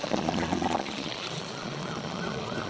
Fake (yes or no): yes